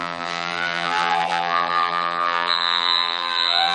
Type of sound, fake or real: fake